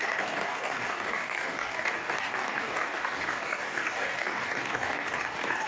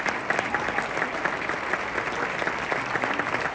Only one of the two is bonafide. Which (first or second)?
second